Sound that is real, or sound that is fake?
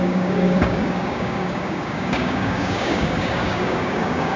fake